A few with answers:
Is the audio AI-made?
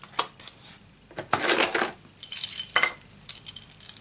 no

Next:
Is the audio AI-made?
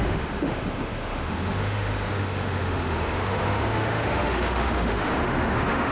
yes